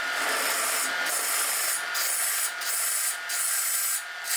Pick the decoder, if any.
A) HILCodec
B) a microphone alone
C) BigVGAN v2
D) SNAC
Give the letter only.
B